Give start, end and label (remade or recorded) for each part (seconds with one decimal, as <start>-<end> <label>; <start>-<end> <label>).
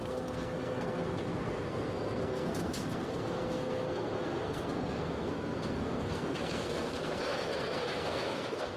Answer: 0.0-8.8 remade